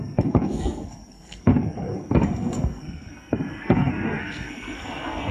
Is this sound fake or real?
fake